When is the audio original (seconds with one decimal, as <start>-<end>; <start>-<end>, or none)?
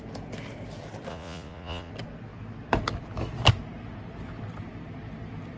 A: 0.0-1.1; 1.9-5.6